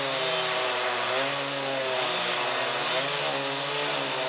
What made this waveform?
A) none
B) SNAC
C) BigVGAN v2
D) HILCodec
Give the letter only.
A